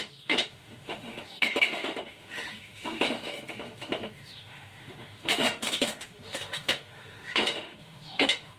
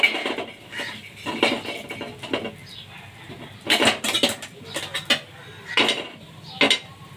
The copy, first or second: first